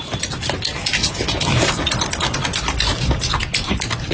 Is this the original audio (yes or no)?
yes